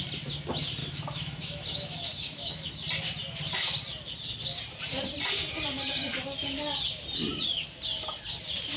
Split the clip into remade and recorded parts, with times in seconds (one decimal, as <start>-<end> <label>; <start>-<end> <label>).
0.0-0.8 recorded; 0.8-2.7 remade; 2.7-8.8 recorded